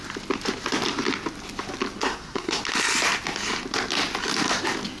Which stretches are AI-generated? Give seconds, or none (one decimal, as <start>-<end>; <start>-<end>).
2.0-2.6